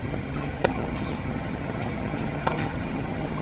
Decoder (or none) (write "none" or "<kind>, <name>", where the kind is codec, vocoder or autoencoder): vocoder, HiFi-GAN